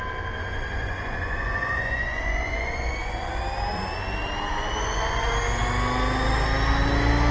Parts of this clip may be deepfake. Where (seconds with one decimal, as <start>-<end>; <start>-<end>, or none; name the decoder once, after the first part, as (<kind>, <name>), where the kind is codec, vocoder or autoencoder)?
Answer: 0.4-3.4 (vocoder, Vocos); 4.5-5.3